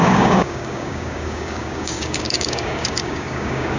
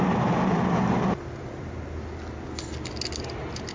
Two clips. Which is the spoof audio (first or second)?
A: first